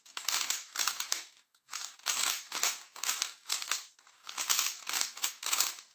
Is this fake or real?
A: fake